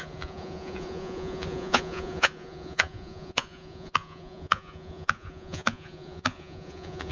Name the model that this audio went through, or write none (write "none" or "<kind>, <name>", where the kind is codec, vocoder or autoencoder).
vocoder, Vocos